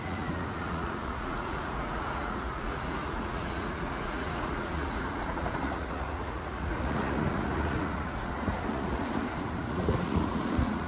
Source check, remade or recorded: remade